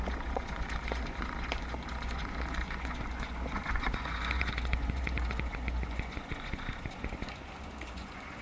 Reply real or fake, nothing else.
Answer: fake